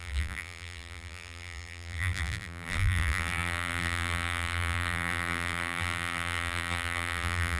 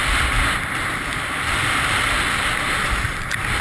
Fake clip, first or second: first